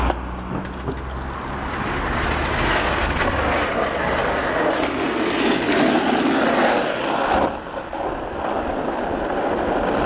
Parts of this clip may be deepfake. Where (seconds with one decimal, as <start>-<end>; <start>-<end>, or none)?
4.2-4.7